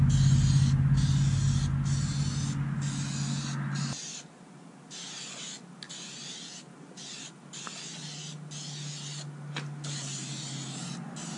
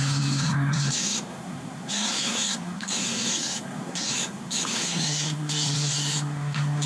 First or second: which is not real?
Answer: second